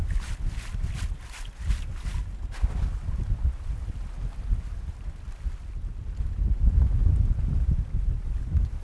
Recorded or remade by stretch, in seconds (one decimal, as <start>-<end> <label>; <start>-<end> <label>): 0.0-8.8 recorded